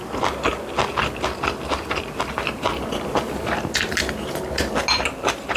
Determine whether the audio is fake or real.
real